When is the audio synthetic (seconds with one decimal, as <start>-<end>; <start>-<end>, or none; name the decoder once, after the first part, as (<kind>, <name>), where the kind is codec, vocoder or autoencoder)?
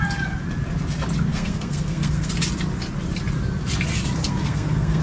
1.3-2.3 (codec, SNAC); 4.2-5.0